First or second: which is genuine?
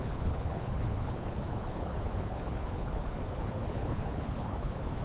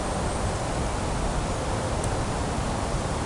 second